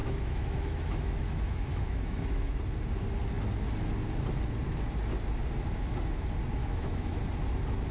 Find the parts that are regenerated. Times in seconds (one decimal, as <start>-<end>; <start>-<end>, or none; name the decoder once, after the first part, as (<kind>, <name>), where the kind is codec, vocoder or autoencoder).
0.0-2.6 (autoencoder, DAC-VAE); 6.6-7.2